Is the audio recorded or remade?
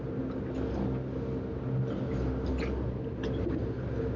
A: recorded